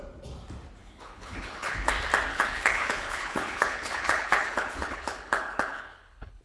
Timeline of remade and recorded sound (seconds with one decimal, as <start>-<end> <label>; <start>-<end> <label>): 0.0-0.8 recorded; 0.8-1.9 remade; 1.9-2.3 recorded; 2.3-6.4 remade